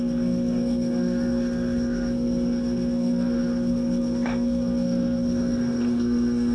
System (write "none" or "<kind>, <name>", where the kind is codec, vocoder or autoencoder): codec, SNAC